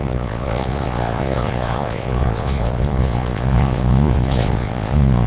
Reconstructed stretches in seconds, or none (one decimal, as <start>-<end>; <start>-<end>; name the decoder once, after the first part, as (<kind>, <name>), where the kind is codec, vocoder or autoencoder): 0.0-5.3 (vocoder, Vocos)